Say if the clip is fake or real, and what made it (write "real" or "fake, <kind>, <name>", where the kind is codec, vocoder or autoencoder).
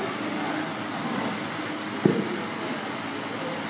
real